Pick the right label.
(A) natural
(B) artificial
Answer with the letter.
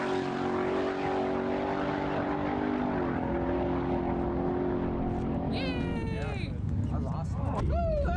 A